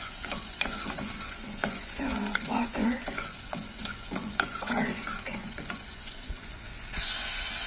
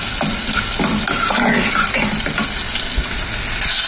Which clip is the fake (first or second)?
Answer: first